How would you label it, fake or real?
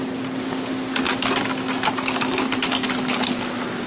real